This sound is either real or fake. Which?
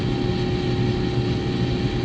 real